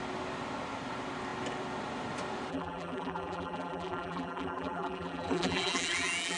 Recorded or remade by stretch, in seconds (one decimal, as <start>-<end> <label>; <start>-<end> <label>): 0.0-2.5 recorded; 2.5-6.4 remade